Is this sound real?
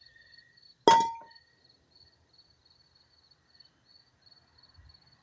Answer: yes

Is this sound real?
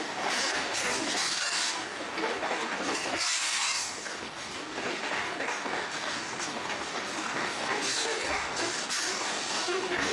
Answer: no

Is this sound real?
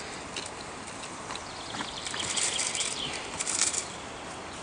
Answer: no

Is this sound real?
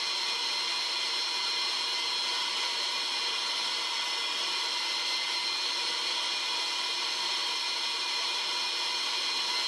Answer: yes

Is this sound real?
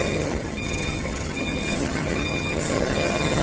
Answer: no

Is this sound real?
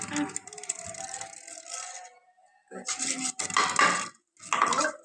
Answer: yes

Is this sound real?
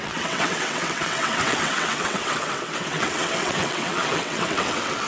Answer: no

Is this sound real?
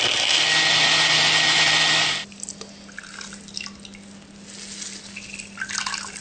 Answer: yes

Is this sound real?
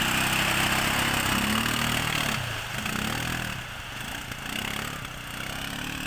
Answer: yes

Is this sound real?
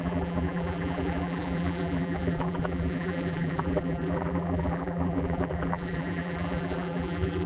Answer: no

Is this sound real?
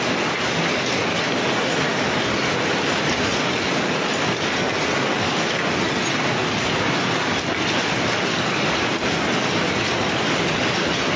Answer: yes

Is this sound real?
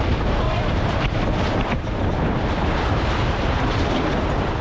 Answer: no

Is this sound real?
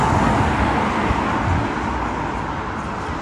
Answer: yes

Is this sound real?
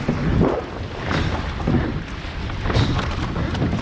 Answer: yes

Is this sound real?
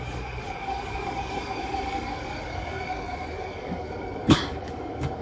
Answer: no